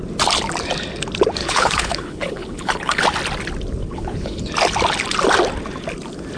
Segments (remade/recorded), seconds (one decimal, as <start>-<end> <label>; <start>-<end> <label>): 0.0-1.4 recorded; 1.4-3.0 remade; 3.0-3.8 recorded; 3.8-4.4 remade; 4.4-6.4 recorded